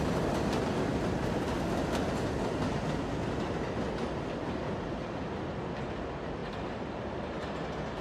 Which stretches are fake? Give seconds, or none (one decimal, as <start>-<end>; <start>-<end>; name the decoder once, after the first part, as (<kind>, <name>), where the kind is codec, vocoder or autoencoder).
none